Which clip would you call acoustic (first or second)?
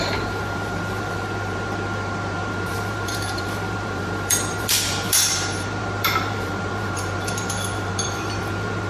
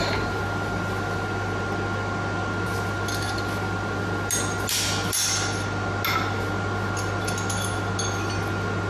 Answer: second